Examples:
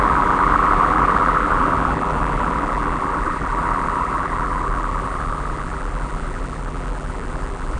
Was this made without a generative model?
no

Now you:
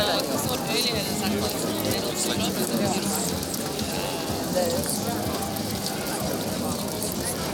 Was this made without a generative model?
yes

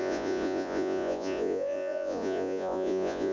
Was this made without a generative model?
no